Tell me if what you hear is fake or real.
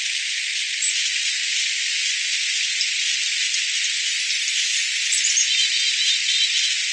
real